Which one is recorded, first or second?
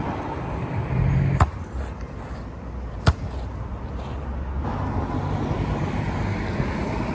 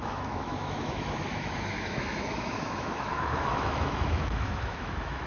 first